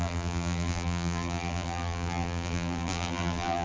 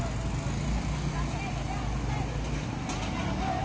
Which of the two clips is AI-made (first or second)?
first